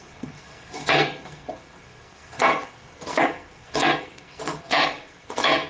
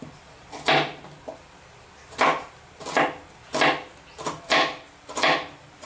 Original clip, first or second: second